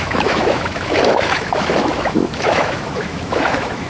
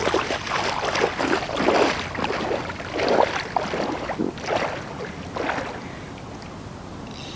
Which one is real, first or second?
second